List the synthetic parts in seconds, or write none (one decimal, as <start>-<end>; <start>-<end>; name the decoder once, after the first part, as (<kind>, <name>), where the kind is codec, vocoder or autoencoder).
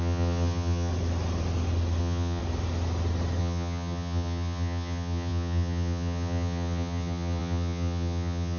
0.0-0.9 (vocoder, HiFi-GAN); 2.0-2.4; 3.4-8.6